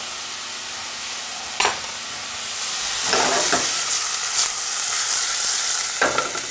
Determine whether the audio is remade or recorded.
recorded